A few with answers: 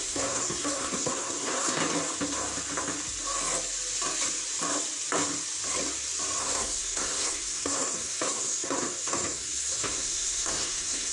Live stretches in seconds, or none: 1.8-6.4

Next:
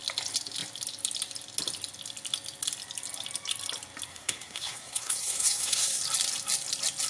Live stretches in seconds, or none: 0.0-4.1; 6.0-7.1